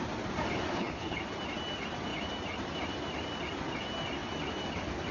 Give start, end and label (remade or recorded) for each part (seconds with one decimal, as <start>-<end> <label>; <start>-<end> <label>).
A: 0.0-0.7 recorded; 0.7-1.2 remade; 1.2-5.1 recorded